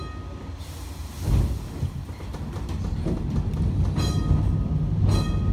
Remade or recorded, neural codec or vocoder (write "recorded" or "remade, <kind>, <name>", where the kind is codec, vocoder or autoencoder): recorded